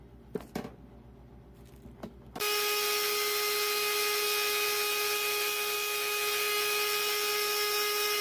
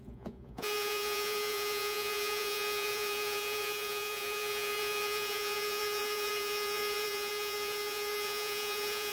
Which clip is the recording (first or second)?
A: first